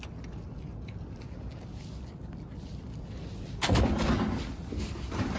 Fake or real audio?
real